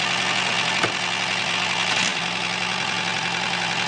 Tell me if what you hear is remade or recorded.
recorded